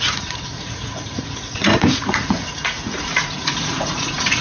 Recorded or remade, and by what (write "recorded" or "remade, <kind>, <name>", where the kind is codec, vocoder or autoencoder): remade, vocoder, Vocos